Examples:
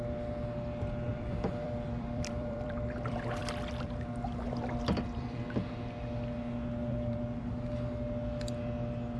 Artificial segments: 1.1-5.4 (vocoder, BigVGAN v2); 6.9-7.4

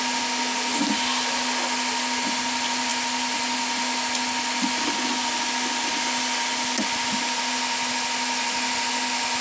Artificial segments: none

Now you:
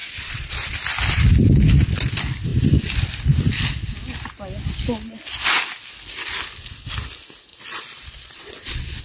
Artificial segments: 0.0-0.7 (vocoder, Vocos); 7.5-9.0